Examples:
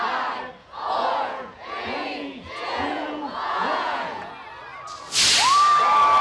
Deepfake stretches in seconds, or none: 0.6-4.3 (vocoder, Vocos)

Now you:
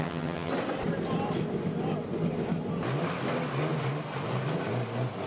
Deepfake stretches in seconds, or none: 0.0-0.5 (vocoder, HiFi-GAN)

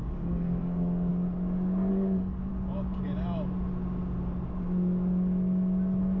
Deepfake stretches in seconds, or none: 0.0-1.1 (codec, DAC); 1.9-2.5

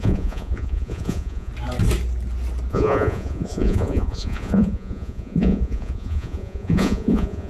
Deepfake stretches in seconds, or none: 0.0-1.5 (vocoder, Vocos); 2.7-7.5